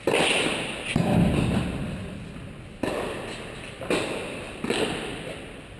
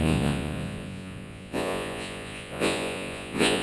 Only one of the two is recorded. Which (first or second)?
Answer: first